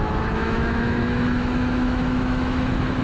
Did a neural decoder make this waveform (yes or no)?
yes